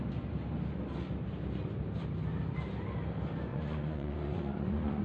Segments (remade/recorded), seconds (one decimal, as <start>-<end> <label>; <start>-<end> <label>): 0.0-3.5 recorded; 3.5-5.0 remade